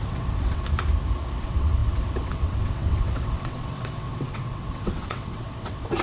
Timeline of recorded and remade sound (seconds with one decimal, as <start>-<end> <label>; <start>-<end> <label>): 0.0-0.6 remade; 0.6-1.4 recorded; 1.4-6.0 remade